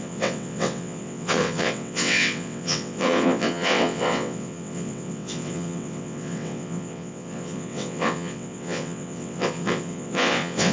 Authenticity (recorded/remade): remade